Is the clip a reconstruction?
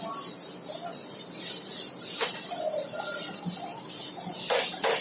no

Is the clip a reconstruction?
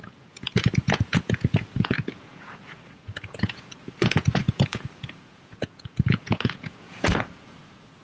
yes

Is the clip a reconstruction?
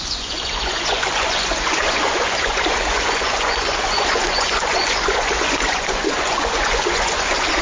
yes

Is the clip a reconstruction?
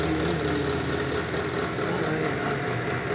no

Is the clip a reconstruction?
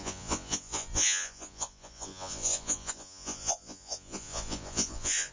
yes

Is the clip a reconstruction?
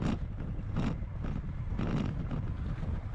no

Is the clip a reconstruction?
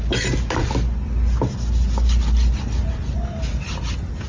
no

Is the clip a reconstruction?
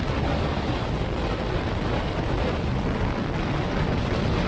no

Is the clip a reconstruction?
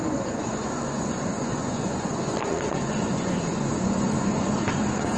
yes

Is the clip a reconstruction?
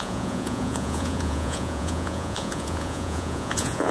yes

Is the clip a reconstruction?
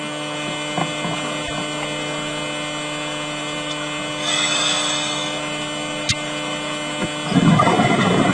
no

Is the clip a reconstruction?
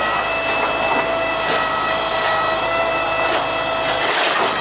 no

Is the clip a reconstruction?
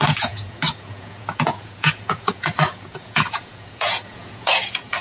yes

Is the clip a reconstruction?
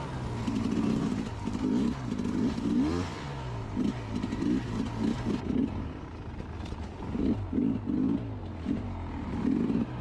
no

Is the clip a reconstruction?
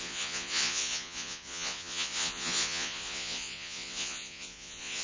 yes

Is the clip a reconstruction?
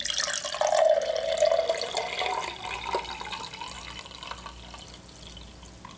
no